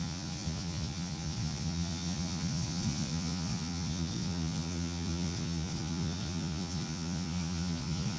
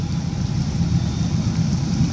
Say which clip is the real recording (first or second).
second